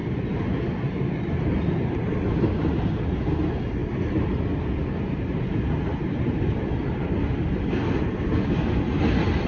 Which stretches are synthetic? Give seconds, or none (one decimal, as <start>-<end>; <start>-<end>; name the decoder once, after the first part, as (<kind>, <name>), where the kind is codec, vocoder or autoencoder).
none